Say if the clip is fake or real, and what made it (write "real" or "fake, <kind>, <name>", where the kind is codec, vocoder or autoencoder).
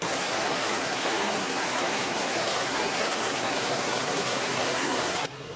fake, codec, SNAC